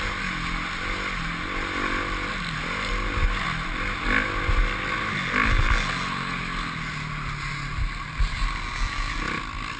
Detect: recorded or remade recorded